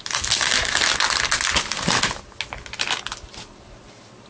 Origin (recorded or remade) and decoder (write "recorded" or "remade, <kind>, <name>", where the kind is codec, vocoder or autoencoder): recorded